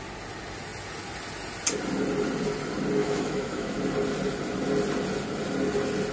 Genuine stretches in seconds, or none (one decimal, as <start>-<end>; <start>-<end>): 0.0-3.0; 3.8-6.1